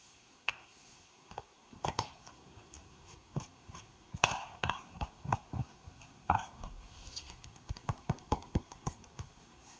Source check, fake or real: fake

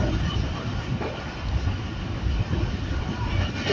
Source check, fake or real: real